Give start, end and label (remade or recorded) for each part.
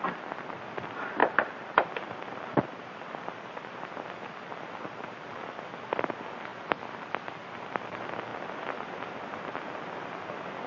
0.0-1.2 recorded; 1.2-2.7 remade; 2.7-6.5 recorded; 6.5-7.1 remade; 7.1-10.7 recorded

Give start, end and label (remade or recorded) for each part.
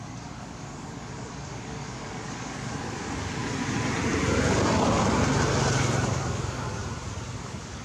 0.0-3.4 remade; 3.4-6.1 recorded; 6.1-6.8 remade; 6.8-7.3 recorded; 7.3-7.8 remade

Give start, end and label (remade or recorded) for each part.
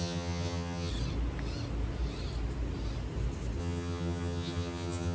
0.0-0.9 remade; 0.9-3.6 recorded; 3.6-5.1 remade